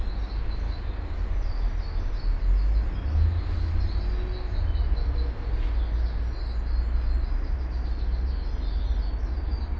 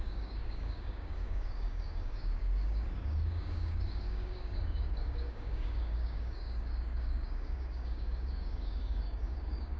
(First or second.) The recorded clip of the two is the first